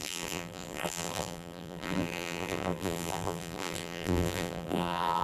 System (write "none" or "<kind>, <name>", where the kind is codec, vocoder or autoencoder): vocoder, BigVGAN v2